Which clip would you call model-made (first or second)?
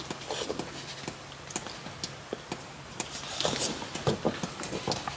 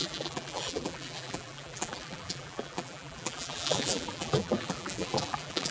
second